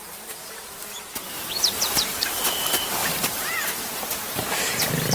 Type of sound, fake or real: fake